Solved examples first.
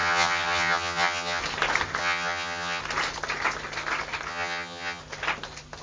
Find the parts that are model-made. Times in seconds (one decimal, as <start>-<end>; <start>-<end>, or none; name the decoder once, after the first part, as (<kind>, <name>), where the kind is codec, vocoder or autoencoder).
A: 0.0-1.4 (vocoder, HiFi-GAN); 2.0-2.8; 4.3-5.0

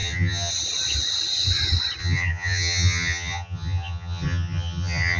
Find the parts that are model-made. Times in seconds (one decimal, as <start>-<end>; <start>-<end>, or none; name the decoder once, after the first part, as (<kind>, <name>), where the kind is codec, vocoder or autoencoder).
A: 0.0-0.5 (vocoder, HiFi-GAN); 2.0-5.2

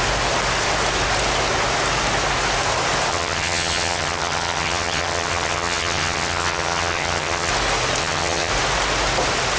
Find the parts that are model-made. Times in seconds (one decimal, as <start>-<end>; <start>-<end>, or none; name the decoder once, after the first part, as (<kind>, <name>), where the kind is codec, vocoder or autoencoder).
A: 3.1-7.5 (vocoder, HiFi-GAN); 8.0-8.5